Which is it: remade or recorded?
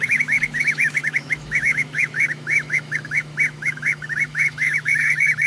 remade